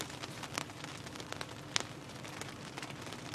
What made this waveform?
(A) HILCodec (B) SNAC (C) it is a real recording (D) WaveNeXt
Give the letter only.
C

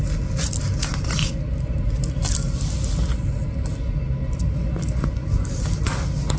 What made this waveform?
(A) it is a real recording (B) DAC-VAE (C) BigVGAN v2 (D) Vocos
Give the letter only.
A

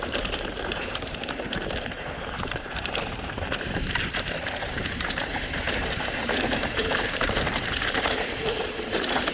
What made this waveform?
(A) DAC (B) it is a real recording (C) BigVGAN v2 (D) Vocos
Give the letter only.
C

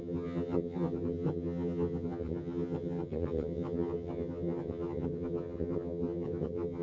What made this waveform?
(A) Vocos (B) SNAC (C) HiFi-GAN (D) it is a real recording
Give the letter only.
C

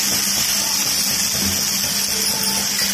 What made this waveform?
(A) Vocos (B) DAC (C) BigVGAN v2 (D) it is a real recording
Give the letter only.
D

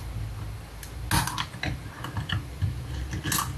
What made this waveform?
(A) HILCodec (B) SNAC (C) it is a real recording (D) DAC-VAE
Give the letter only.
C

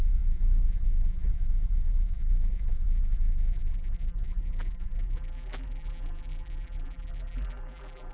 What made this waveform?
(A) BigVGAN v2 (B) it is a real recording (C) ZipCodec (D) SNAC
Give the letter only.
A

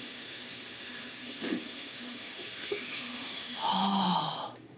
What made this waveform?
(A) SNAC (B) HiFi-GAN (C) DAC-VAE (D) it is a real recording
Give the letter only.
C